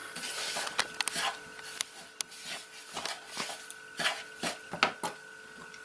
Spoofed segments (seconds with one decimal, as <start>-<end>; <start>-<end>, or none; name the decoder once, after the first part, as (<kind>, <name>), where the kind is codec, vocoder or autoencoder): none